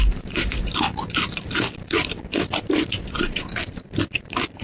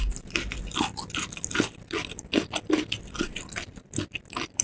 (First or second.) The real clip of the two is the second